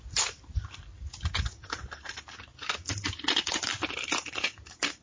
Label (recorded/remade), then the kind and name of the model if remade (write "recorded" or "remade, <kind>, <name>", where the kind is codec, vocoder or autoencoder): recorded